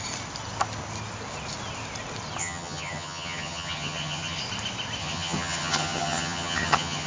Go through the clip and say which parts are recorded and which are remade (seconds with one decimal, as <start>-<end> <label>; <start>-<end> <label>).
0.0-2.4 recorded; 2.4-4.4 remade; 4.4-5.0 recorded; 5.0-7.1 remade

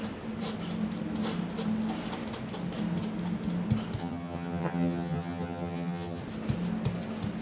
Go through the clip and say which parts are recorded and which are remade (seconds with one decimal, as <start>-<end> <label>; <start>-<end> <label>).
0.0-4.0 recorded; 4.0-6.2 remade; 6.2-7.4 recorded

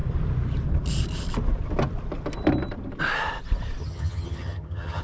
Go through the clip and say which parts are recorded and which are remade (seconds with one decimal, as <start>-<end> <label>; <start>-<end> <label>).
0.0-3.8 recorded; 3.8-5.0 remade

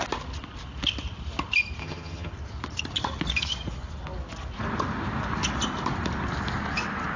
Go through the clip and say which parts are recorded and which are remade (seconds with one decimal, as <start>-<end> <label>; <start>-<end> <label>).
0.0-1.8 recorded; 1.8-2.3 remade; 2.3-7.2 recorded

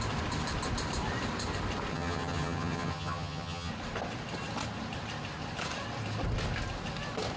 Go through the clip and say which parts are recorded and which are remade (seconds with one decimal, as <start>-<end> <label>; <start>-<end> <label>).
0.0-1.9 recorded; 1.9-3.7 remade; 3.7-7.4 recorded

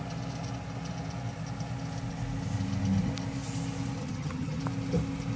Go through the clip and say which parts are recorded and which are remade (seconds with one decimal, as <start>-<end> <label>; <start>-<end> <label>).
0.0-4.0 recorded; 4.0-4.6 remade; 4.6-5.4 recorded